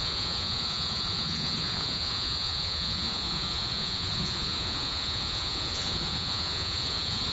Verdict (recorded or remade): remade